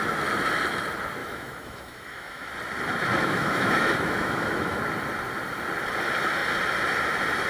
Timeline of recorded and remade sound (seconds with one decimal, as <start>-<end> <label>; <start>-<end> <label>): 0.0-1.2 recorded; 1.2-2.5 remade; 2.5-3.1 recorded; 3.1-4.8 remade; 4.8-7.5 recorded

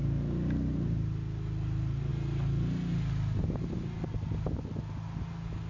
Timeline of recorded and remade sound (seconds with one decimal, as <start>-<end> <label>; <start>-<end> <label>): 0.0-5.7 recorded

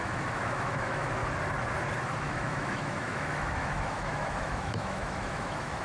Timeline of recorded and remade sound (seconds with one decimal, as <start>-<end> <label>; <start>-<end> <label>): 0.0-1.2 remade; 1.2-2.2 recorded; 2.2-5.8 remade

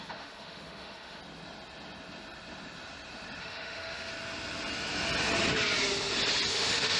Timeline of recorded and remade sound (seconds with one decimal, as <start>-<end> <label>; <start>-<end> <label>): 0.0-1.2 remade; 1.2-3.4 recorded; 3.4-4.1 remade; 4.1-6.5 recorded; 6.5-7.0 remade

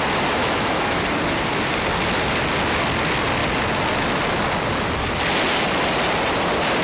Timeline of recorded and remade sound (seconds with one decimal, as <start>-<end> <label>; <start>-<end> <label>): 0.0-0.4 recorded; 0.4-1.0 remade; 1.0-6.8 recorded

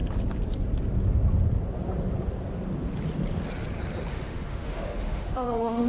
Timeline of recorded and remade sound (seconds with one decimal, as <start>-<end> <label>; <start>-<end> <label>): 0.0-4.1 recorded; 4.1-5.9 remade

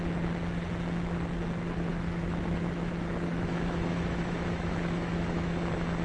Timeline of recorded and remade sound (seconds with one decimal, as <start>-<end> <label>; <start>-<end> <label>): 0.0-1.9 recorded; 1.9-5.5 remade; 5.5-6.0 recorded